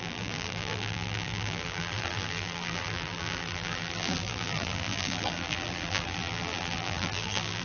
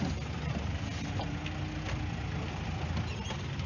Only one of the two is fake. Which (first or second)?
first